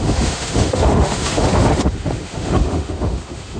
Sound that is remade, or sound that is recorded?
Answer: remade